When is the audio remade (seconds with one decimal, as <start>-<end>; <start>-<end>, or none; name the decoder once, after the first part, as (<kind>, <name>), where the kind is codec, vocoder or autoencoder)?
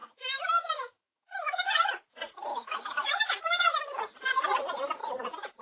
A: 0.0-1.7 (autoencoder, DAC-VAE); 2.5-4.0